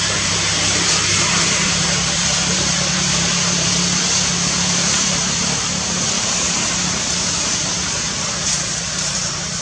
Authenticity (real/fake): fake